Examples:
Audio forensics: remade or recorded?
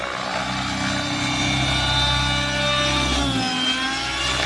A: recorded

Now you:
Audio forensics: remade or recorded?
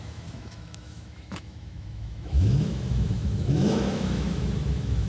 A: remade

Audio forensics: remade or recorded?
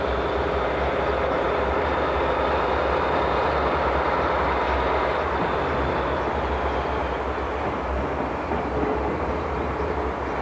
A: recorded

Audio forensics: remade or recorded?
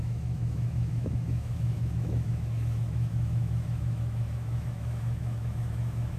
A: remade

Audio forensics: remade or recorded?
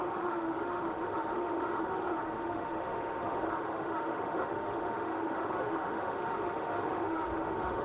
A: remade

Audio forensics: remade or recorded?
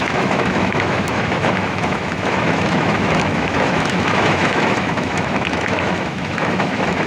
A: remade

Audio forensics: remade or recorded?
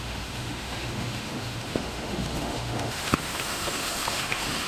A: remade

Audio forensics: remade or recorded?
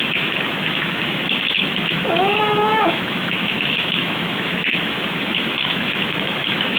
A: remade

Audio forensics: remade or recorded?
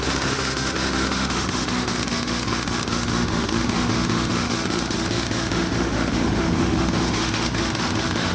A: remade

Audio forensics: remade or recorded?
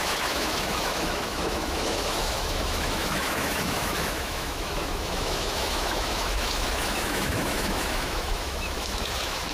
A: remade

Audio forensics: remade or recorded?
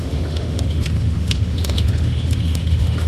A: remade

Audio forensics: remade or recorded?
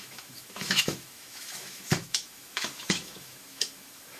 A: remade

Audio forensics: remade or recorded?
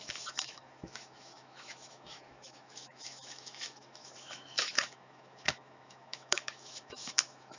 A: remade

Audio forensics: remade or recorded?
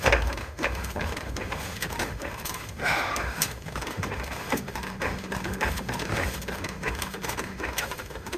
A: remade